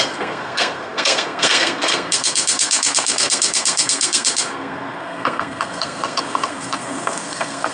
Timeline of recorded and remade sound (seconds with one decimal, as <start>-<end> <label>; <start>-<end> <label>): 0.0-7.7 remade

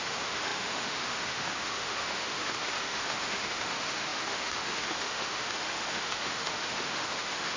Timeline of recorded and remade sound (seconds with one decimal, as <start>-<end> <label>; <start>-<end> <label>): 0.0-7.6 remade

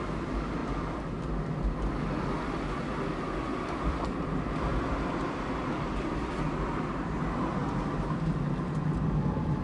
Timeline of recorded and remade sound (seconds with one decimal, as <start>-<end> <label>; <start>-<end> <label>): 0.0-0.6 recorded; 0.6-1.2 remade; 1.2-3.5 recorded; 3.5-6.3 remade; 6.3-7.6 recorded; 7.6-8.3 remade; 8.3-9.6 recorded